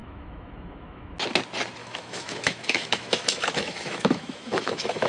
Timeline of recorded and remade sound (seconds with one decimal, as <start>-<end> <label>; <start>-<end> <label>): 0.0-1.1 remade; 1.1-1.8 recorded; 1.8-5.1 remade